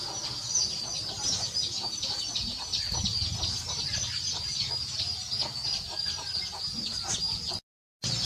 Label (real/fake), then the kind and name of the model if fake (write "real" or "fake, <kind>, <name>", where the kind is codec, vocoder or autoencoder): real